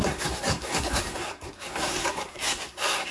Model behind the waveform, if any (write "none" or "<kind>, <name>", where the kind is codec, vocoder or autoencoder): codec, SNAC